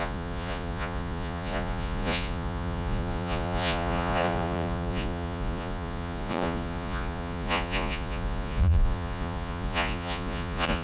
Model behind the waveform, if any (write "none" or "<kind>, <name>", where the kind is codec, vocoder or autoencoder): vocoder, Vocos